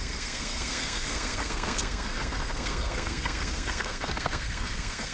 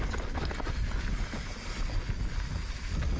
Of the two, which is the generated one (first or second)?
first